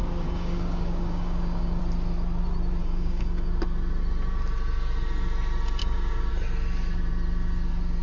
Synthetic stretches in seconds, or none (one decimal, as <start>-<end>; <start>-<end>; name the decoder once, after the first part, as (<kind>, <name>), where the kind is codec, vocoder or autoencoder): 0.0-1.8 (codec, DAC); 2.8-3.5; 5.8-6.3